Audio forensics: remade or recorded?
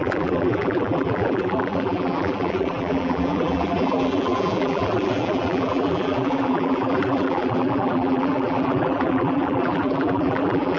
remade